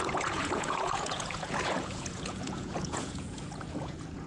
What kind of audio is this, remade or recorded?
remade